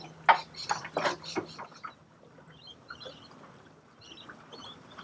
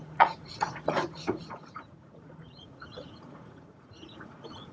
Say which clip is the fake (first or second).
second